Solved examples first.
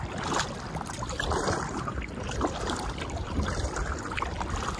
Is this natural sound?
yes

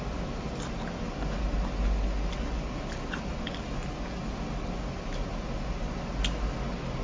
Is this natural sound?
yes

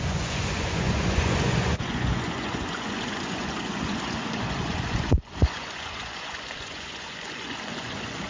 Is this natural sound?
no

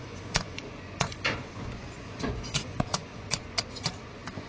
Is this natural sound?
no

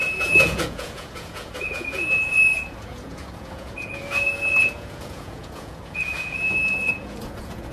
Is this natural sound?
no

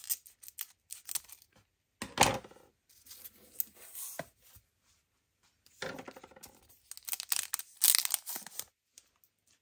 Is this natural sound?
yes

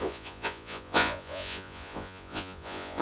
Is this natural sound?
no